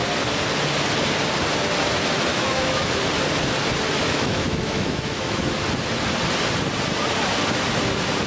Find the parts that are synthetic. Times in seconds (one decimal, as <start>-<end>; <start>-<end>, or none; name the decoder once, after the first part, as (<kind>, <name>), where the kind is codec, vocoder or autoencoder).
2.3-2.9 (autoencoder, DAC-VAE); 4.0-5.4